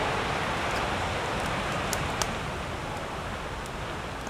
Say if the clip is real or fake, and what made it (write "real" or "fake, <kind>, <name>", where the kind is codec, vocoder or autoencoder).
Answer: real